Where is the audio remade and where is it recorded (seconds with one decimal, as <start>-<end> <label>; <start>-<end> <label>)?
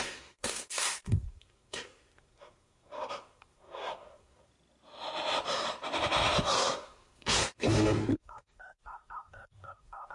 0.0-4.5 remade; 4.5-6.4 recorded; 6.4-10.1 remade